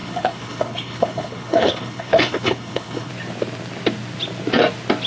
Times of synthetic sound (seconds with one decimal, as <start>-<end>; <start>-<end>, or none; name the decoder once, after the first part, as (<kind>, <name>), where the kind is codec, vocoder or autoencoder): 0.0-3.1 (codec, HILCodec)